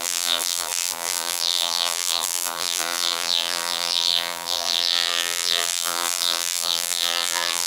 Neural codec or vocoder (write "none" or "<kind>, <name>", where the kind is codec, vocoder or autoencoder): vocoder, BigVGAN v2